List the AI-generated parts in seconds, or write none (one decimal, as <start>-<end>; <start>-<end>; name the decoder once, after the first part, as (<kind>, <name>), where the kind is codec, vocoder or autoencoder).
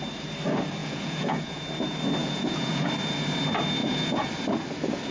0.8-1.6 (vocoder, Vocos); 2.2-2.9; 3.8-4.3